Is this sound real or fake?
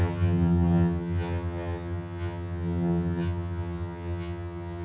fake